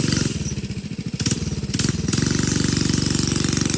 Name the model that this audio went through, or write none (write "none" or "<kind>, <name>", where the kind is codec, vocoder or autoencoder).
none